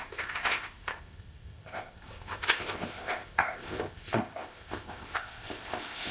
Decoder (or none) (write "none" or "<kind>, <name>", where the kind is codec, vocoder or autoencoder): codec, ZipCodec